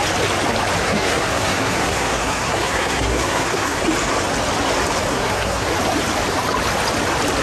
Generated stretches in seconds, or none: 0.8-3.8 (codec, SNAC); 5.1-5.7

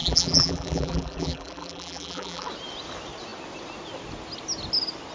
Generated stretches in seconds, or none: 0.0-2.5 (vocoder, BigVGAN v2)

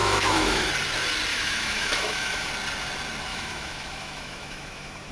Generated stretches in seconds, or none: 0.0-0.7 (autoencoder, DAC-VAE); 1.3-2.5; 3.3-5.1

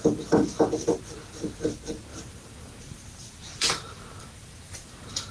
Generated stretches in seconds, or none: 2.1-5.3 (vocoder, BigVGAN v2)

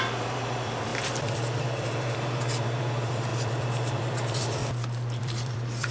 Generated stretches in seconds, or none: 0.0-4.6 (vocoder, BigVGAN v2); 5.2-5.9